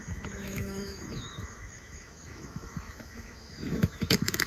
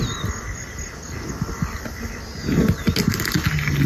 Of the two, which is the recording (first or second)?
second